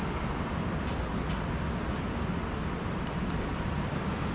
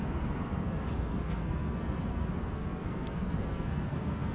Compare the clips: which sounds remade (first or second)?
second